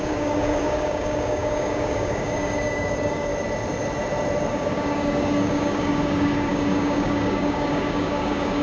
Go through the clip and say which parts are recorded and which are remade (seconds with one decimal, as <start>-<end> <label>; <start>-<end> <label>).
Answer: 0.0-3.3 remade; 3.3-4.5 recorded; 4.5-8.6 remade